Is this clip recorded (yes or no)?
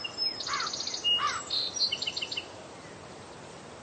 yes